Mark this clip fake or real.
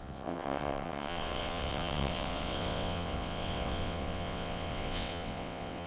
fake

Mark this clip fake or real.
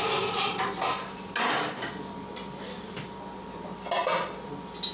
real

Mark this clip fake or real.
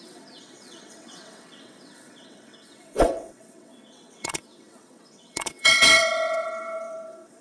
fake